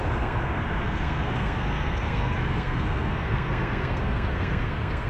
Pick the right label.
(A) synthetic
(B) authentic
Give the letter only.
A